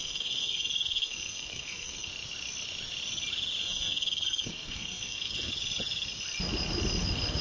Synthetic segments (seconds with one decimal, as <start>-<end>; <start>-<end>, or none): 0.0-2.1; 3.6-5.5